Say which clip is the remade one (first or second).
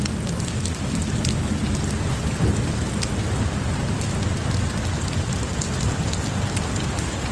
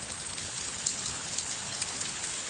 second